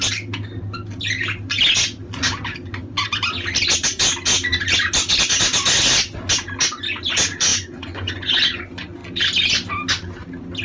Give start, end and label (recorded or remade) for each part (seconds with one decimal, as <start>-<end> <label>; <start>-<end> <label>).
0.0-7.5 recorded; 7.5-8.3 remade; 8.3-10.6 recorded